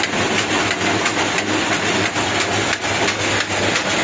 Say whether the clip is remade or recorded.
recorded